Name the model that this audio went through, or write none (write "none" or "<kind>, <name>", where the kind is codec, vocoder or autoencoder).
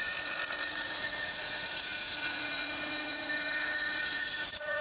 vocoder, Vocos